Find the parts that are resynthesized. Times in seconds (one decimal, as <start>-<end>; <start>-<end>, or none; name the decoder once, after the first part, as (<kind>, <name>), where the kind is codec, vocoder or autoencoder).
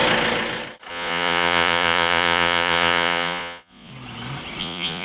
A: 0.9-3.9 (vocoder, Vocos); 4.6-5.0